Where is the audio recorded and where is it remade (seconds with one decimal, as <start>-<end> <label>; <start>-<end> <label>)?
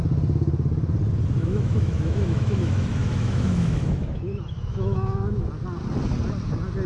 0.0-1.4 recorded; 1.4-5.5 remade; 5.5-6.9 recorded